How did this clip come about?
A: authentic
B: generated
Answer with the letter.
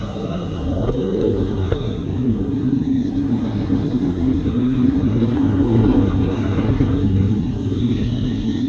B